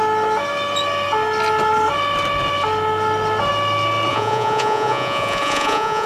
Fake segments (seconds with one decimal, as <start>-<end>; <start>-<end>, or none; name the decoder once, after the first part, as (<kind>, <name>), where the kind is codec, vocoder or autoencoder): 4.1-6.1 (vocoder, Vocos)